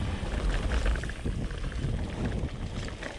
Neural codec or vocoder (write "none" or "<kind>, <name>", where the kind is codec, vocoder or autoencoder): none